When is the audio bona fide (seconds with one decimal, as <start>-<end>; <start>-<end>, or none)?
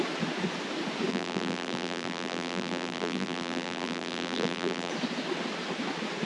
0.0-1.1; 4.9-6.3